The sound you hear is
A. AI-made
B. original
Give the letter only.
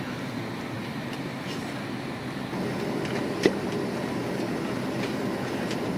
B